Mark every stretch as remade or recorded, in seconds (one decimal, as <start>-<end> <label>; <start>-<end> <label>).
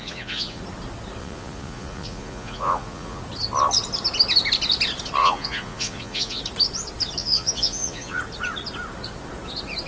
0.0-0.6 remade; 0.6-1.2 recorded; 1.2-3.2 remade; 3.2-5.2 recorded; 5.2-6.4 remade; 6.4-7.2 recorded; 7.2-8.2 remade; 8.2-9.9 recorded